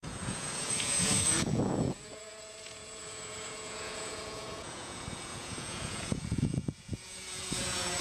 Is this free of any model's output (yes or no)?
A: no